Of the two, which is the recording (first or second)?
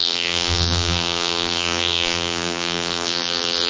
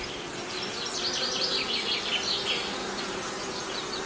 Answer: second